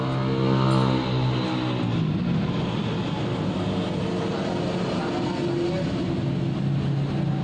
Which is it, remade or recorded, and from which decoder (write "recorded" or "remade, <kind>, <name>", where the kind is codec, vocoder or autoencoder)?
recorded